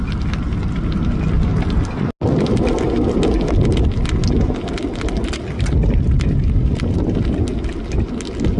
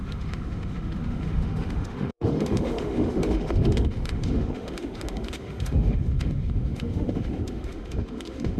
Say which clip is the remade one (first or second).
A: second